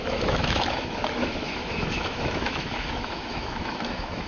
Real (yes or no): no